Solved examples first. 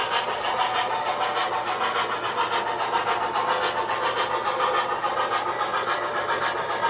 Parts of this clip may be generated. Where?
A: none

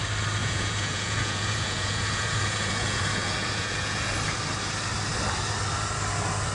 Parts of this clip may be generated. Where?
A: 0.4-4.1

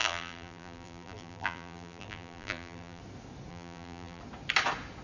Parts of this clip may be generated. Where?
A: 0.0-3.0; 3.5-4.2

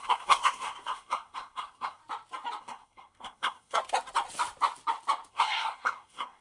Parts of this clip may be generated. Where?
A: 0.0-2.0; 2.6-3.8; 5.3-6.4

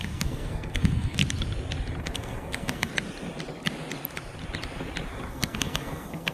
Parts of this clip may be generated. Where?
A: 0.0-1.2; 2.0-2.9; 5.3-6.3

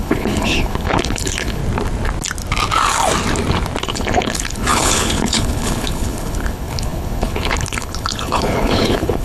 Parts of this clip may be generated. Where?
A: 0.0-1.6; 3.8-9.2

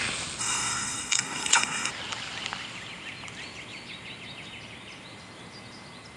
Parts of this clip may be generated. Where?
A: 0.4-1.9

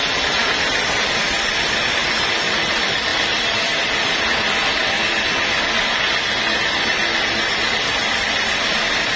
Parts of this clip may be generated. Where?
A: 2.0-2.7; 3.1-4.2; 8.0-8.6